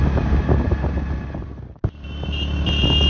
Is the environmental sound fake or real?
real